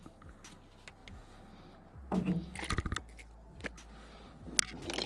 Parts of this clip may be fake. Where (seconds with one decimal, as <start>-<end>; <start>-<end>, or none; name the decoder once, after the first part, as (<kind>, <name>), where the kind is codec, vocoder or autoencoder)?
none